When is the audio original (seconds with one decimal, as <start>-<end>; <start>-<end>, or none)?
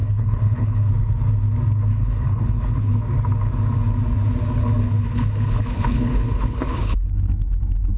0.9-1.9; 3.0-4.8; 7.1-8.0